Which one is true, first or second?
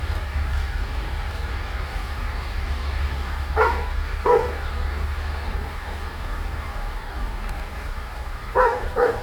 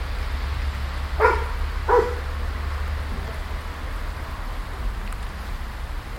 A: second